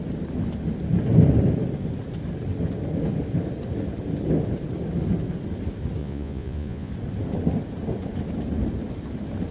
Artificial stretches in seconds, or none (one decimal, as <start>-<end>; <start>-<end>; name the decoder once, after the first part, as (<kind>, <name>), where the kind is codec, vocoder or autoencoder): 6.0-6.9 (vocoder, Vocos)